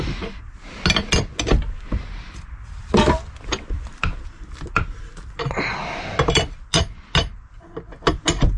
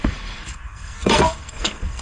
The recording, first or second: first